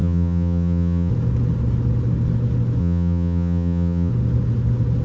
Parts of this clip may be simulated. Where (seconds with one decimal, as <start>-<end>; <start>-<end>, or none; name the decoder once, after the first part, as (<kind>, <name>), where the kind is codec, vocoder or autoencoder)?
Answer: 0.0-1.1 (vocoder, HiFi-GAN); 2.8-4.1